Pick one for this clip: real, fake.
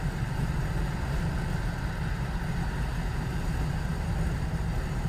real